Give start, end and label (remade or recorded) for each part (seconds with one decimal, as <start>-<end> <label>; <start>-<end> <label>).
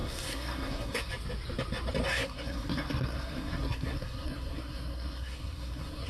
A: 0.0-1.1 remade; 1.1-2.1 recorded; 2.1-6.1 remade